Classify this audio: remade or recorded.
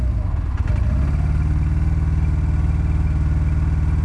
recorded